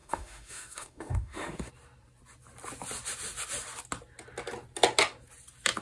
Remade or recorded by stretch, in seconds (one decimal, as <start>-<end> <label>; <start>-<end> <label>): 0.0-1.7 remade; 1.7-5.8 recorded